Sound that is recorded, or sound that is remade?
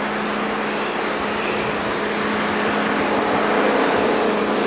recorded